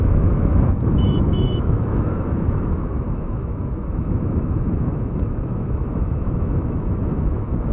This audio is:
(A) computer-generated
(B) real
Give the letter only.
A